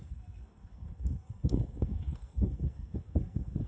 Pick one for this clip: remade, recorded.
remade